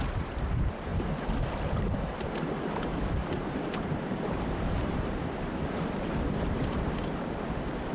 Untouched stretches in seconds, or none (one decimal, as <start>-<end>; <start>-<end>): 0.9-3.5